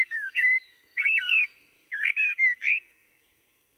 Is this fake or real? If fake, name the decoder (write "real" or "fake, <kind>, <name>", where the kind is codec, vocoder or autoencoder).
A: fake, codec, SNAC